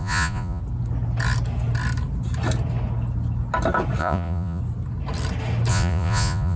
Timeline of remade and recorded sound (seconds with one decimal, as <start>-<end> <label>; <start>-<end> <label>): 0.0-0.6 remade; 0.6-4.0 recorded; 4.0-4.6 remade; 4.6-5.7 recorded; 5.7-6.6 remade